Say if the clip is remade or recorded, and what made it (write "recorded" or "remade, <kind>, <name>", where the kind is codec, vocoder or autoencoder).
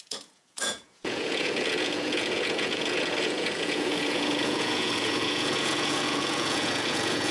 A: remade, vocoder, Vocos